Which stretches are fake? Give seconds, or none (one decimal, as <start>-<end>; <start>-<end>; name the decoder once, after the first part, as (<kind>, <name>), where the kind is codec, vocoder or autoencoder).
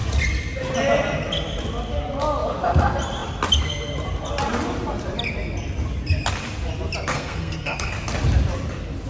7.1-7.9 (codec, SNAC)